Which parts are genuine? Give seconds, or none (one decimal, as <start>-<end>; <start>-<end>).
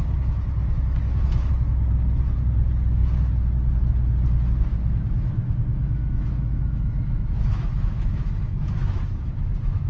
0.0-0.6; 1.5-4.7